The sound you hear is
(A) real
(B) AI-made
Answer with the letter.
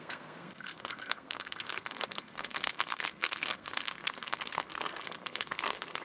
B